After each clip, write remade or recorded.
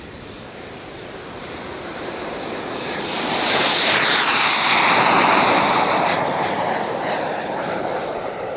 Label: remade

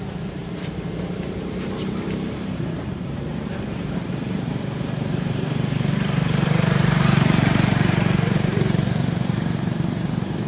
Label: remade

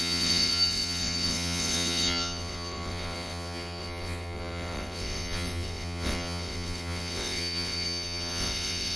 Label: remade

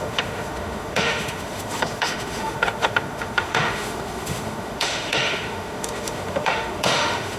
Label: remade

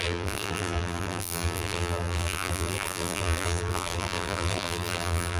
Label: remade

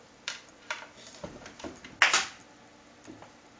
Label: recorded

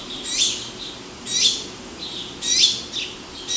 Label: recorded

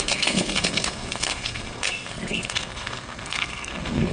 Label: remade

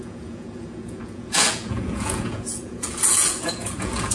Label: remade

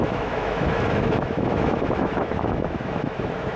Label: remade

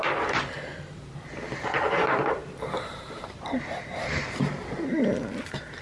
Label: recorded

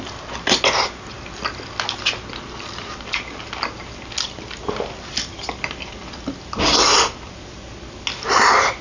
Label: recorded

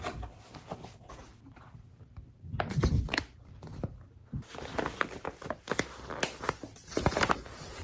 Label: recorded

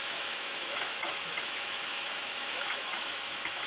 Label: remade